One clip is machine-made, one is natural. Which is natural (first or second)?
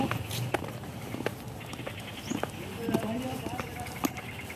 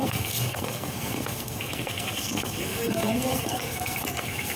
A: first